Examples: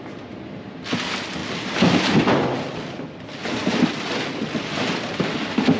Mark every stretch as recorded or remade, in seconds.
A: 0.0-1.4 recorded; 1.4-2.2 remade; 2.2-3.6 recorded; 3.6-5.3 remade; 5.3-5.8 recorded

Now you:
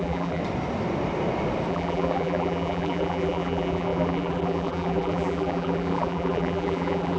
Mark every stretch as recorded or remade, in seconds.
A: 0.0-0.4 remade; 0.4-1.7 recorded; 1.7-7.2 remade